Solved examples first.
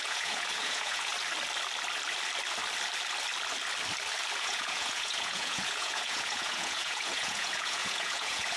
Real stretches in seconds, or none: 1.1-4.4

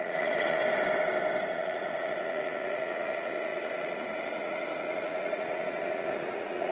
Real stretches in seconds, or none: 0.6-1.5